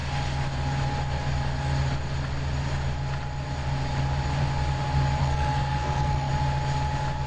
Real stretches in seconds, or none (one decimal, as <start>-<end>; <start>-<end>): 0.0-5.2; 6.3-7.3